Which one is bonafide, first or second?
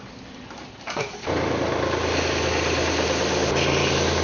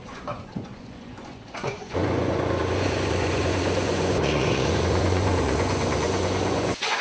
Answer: first